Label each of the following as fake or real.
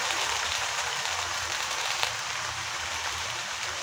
fake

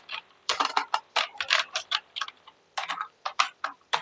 fake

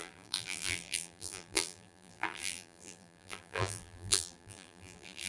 fake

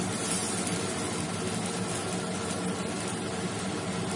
real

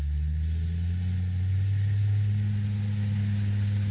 real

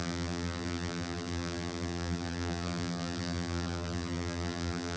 fake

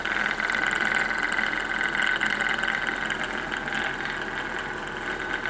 real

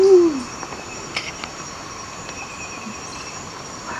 real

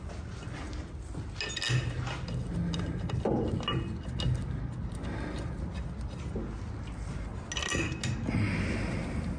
real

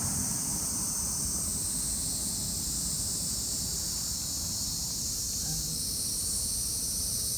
fake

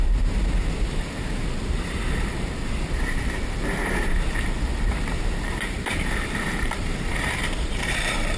fake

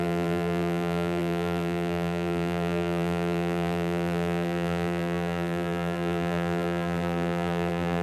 fake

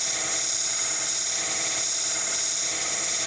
fake